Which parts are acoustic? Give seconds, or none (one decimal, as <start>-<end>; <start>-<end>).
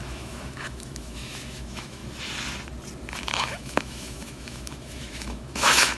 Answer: 2.0-3.3